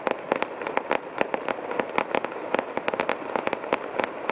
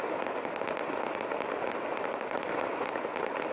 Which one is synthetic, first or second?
second